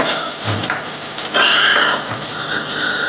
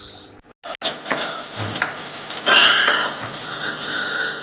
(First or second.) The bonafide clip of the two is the second